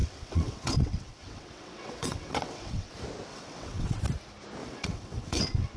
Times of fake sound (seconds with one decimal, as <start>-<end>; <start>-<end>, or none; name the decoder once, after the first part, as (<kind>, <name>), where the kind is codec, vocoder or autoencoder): 0.0-2.9 (vocoder, WaveNeXt); 3.3-4.0; 4.6-5.8